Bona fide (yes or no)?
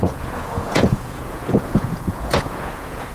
no